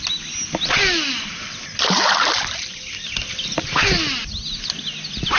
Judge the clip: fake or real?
real